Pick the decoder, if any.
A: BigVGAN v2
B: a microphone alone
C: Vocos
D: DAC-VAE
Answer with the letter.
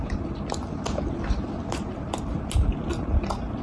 B